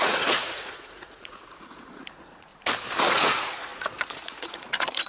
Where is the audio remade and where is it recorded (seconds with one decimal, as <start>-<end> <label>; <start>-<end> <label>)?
0.0-2.5 remade; 2.5-3.1 recorded; 3.1-5.1 remade